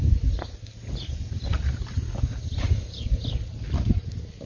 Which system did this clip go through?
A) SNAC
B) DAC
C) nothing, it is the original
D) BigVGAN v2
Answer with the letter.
C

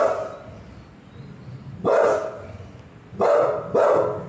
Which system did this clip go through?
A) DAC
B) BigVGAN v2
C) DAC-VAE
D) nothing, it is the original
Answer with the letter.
D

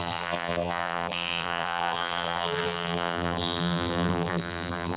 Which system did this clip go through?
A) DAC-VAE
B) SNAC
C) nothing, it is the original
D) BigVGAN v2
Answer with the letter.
D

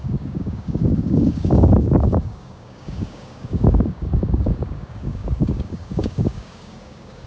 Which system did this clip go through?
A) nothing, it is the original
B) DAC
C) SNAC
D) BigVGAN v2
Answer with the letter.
B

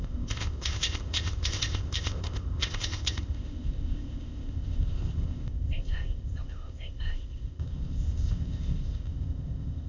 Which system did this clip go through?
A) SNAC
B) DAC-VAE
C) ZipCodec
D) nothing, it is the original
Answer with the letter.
C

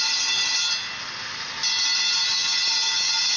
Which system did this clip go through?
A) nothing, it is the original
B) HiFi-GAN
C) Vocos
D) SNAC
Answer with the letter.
A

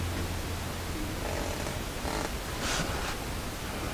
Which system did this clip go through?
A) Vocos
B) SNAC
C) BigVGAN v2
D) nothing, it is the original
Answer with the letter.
D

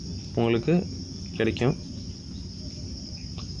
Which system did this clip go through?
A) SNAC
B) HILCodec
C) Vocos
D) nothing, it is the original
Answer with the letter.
D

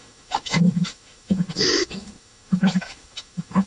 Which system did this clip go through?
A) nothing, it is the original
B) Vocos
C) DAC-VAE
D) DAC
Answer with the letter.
C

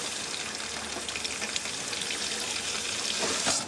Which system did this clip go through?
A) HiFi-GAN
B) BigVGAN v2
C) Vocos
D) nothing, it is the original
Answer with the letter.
D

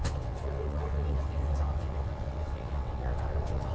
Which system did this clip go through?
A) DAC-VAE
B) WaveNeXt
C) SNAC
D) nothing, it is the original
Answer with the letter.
B